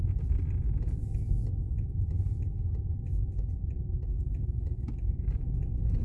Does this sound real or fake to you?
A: real